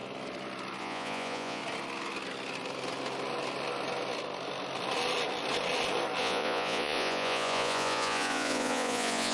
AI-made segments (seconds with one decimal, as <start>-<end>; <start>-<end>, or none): 0.8-1.6; 6.2-9.3

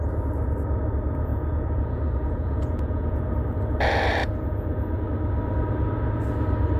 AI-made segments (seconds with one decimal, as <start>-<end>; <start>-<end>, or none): 1.3-3.3; 4.2-5.0